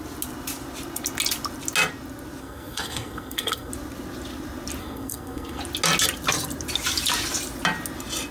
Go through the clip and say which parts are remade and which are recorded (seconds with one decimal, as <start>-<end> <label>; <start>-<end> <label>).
0.0-2.4 recorded; 2.4-3.7 remade; 3.7-4.8 recorded; 4.8-5.6 remade; 5.6-8.3 recorded

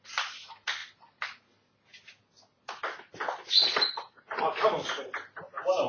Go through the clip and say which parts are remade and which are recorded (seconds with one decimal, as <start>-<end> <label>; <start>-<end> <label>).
0.0-5.9 recorded

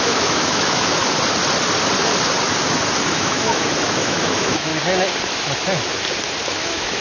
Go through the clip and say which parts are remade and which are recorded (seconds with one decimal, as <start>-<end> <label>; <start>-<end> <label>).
0.0-1.0 remade; 1.0-3.1 recorded; 3.1-4.7 remade; 4.7-6.5 recorded; 6.5-7.0 remade

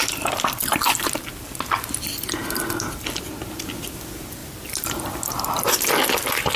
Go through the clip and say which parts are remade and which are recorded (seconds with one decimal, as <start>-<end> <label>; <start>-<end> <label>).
0.0-6.6 recorded

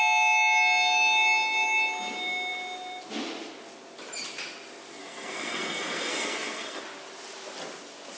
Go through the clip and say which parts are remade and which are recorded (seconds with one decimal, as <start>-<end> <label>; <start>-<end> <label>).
0.0-5.0 recorded; 5.0-6.8 remade; 6.8-8.2 recorded

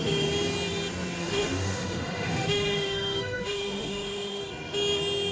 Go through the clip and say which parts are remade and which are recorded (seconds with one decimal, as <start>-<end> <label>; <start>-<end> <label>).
0.0-1.2 recorded; 1.2-4.4 remade; 4.4-5.3 recorded

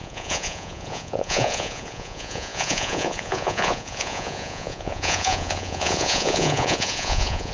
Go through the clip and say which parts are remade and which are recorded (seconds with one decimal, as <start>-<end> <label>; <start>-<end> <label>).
0.0-7.5 remade